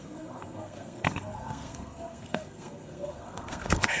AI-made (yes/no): yes